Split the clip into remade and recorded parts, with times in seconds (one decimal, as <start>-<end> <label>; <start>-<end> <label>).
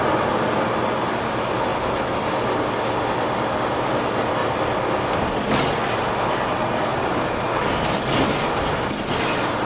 0.0-6.9 recorded; 6.9-7.6 remade; 7.6-9.7 recorded